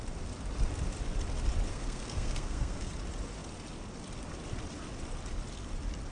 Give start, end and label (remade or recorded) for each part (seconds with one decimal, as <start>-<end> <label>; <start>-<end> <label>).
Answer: 0.0-1.7 recorded; 1.7-2.9 remade; 2.9-6.1 recorded